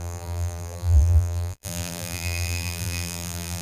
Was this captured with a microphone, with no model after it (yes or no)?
no